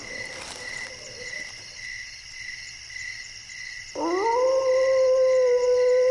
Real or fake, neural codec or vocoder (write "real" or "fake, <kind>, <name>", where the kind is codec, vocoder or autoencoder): real